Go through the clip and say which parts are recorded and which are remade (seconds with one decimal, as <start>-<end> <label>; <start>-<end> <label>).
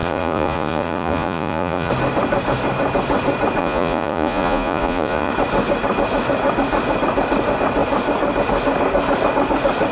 0.0-1.9 remade; 1.9-3.6 recorded; 3.6-5.3 remade; 5.3-9.9 recorded